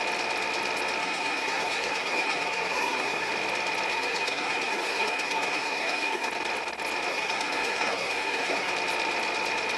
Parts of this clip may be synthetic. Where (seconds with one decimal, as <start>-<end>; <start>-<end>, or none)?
1.0-3.3; 3.9-6.3; 7.1-8.7

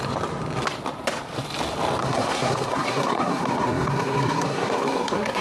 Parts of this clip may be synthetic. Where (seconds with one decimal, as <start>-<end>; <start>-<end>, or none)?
2.0-5.4

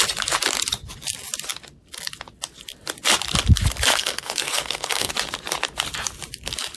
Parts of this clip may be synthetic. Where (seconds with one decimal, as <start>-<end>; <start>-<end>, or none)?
3.9-5.1